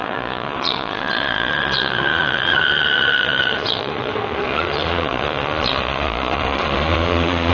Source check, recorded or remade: remade